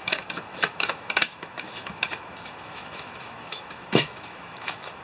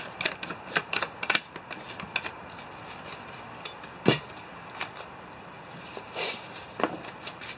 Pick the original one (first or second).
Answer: second